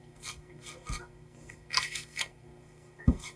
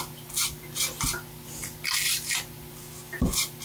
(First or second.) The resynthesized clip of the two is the first